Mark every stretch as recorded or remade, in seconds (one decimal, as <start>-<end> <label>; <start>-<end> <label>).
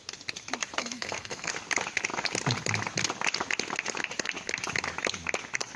0.0-0.8 recorded; 0.8-1.5 remade; 1.5-5.8 recorded